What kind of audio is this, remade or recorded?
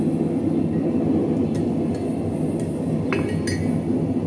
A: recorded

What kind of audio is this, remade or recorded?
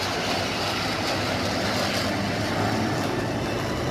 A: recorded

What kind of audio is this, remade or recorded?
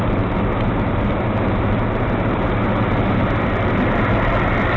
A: remade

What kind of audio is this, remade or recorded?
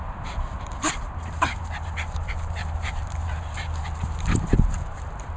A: remade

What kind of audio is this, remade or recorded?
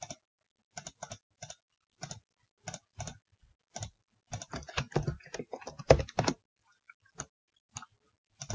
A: recorded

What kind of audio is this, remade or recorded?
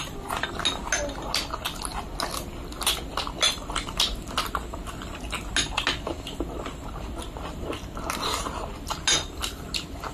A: recorded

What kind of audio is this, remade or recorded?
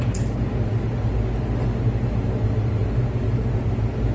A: recorded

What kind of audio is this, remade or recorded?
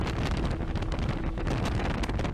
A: recorded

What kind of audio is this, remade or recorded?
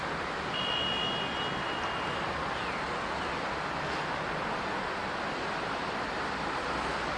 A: recorded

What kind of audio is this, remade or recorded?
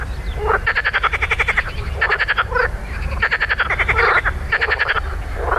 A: recorded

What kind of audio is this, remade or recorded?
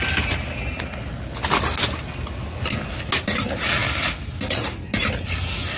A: recorded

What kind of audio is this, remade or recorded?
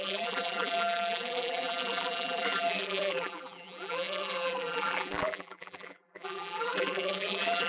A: remade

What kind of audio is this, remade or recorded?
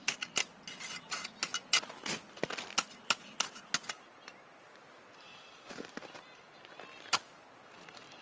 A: recorded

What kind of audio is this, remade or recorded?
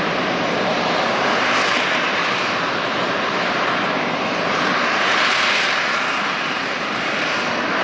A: remade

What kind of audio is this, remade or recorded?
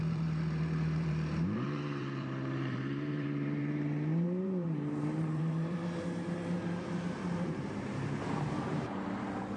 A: remade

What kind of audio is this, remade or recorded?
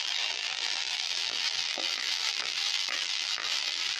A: remade